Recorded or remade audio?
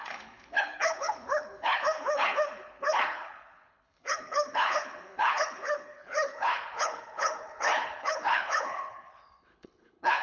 remade